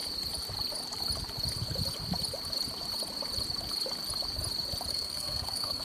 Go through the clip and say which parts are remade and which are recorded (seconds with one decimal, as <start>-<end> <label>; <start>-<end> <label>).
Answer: 0.0-4.9 recorded; 4.9-5.8 remade